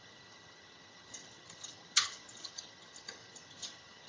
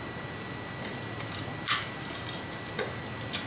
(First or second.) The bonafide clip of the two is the second